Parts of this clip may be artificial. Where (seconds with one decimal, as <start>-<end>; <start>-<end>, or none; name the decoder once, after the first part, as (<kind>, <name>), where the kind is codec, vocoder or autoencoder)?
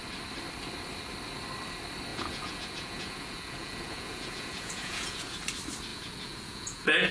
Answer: 2.1-5.4 (vocoder, Vocos); 5.9-7.1